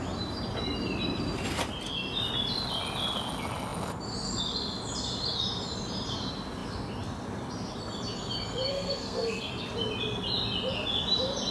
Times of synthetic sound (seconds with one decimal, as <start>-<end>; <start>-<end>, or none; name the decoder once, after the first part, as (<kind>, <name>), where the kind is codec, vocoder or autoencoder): 8.7-9.5 (codec, SNAC)